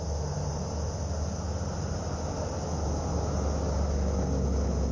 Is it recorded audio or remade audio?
recorded